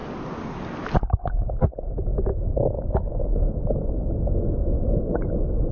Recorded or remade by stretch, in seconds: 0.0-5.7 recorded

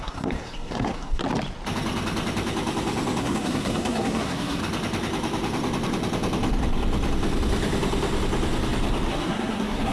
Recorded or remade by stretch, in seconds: 0.0-1.2 remade; 1.2-3.2 recorded; 3.2-4.6 remade; 4.6-9.1 recorded; 9.1-9.9 remade

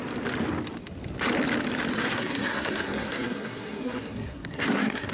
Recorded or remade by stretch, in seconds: 0.0-1.9 recorded; 1.9-5.1 remade

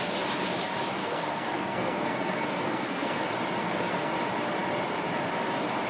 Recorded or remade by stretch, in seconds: 0.0-1.0 recorded; 1.0-3.2 remade; 3.2-3.6 recorded; 3.6-4.1 remade; 4.1-5.9 recorded

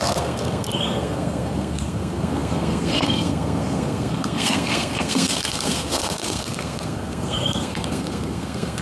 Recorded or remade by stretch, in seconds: 0.0-8.8 remade

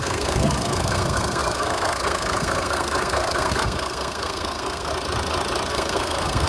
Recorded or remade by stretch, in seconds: 0.0-4.9 remade; 4.9-5.7 recorded; 5.7-6.5 remade